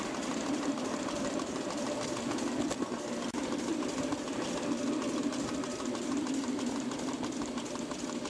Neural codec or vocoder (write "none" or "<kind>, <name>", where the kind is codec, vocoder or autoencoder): none